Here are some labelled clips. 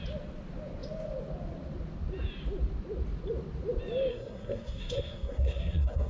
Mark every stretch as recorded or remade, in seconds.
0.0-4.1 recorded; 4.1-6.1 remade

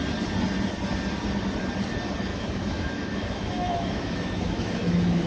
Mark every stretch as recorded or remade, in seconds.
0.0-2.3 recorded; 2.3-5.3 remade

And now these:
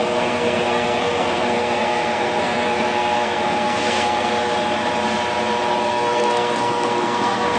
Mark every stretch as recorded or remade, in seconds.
0.0-4.3 remade; 4.3-5.8 recorded; 5.8-7.6 remade

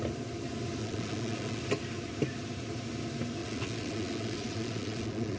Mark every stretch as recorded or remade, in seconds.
0.0-0.8 recorded; 0.8-1.6 remade; 1.6-3.4 recorded; 3.4-5.4 remade